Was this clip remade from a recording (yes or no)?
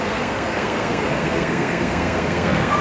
yes